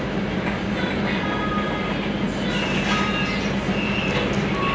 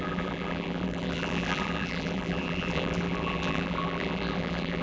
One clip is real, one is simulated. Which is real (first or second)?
first